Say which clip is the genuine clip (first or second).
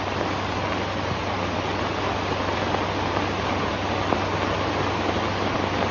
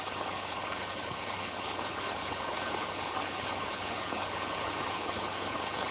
first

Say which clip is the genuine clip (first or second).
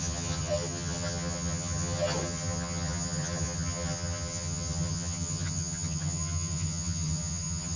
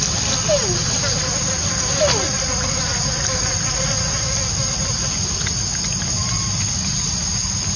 second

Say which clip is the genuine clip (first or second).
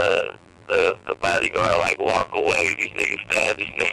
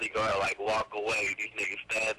second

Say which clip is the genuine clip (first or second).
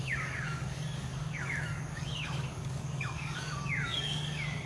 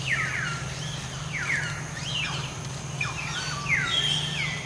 second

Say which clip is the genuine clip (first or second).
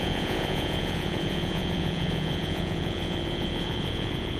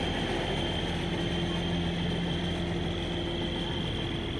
second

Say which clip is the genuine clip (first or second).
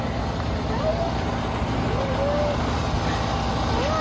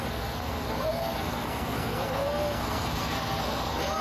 first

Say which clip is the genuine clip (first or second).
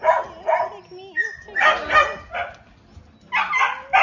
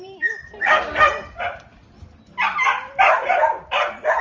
first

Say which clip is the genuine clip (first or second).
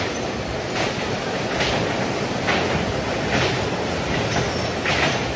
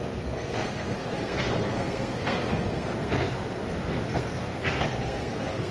first